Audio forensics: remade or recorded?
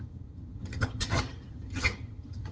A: remade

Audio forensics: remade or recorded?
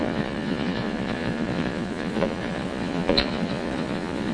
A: remade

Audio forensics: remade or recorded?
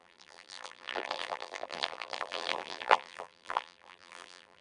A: remade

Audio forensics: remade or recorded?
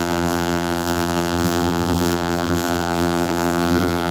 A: remade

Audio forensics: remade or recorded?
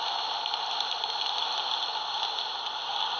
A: recorded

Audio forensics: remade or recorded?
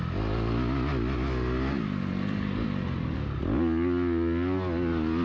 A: recorded